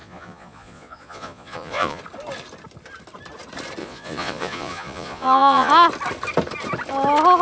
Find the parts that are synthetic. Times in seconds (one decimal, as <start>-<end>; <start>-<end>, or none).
0.0-2.0; 3.8-5.7